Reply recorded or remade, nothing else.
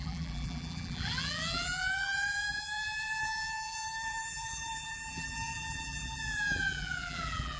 remade